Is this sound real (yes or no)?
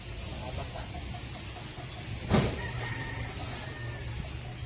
yes